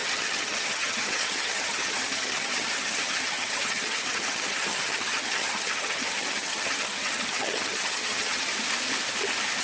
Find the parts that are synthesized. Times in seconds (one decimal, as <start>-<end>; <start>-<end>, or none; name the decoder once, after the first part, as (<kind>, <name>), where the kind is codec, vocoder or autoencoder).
0.0-8.5 (vocoder, HiFi-GAN)